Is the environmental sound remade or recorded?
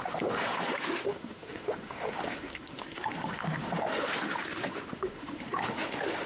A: remade